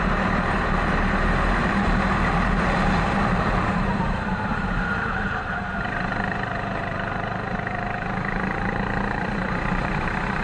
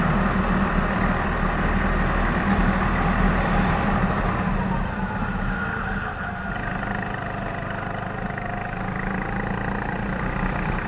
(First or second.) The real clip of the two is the second